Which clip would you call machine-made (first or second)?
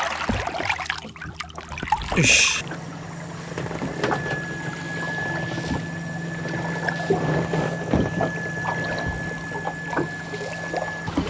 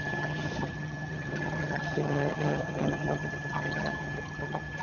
second